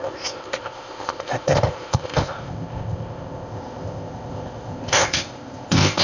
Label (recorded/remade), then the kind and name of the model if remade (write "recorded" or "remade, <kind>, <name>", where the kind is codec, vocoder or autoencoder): remade, codec, ZipCodec